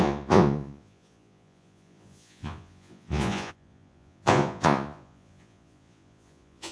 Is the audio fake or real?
fake